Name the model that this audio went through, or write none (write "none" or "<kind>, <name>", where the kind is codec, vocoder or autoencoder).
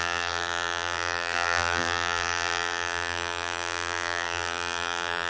vocoder, BigVGAN v2